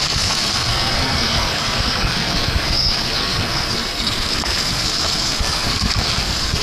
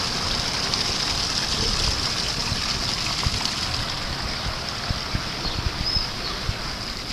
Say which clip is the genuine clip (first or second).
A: second